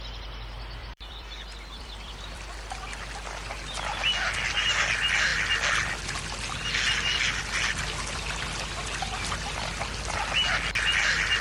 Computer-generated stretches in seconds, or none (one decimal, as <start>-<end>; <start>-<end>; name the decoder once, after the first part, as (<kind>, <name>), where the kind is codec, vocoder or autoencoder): 0.8-2.6 (vocoder, BigVGAN v2)